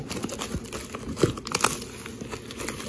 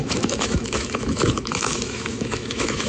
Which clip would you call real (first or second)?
first